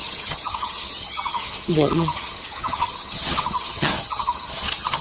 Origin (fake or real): fake